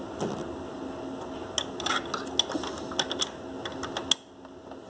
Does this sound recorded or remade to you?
recorded